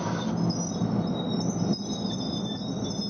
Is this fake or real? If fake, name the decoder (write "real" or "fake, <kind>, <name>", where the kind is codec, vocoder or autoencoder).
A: real